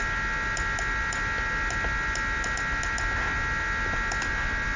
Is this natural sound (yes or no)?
yes